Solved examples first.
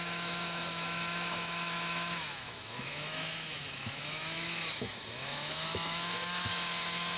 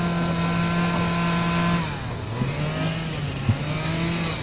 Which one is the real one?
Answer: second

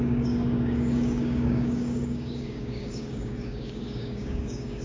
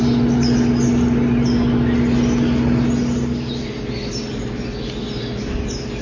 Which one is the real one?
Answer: second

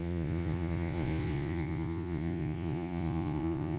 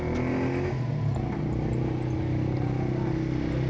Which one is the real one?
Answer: second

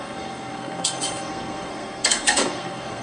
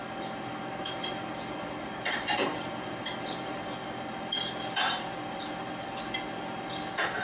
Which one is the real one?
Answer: second